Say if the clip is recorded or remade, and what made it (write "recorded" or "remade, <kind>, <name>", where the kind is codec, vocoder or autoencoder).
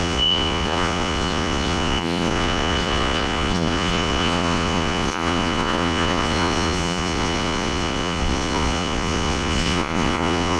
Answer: remade, vocoder, Vocos